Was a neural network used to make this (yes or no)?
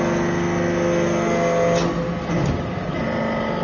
no